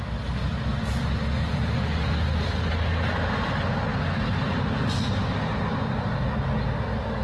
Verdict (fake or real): real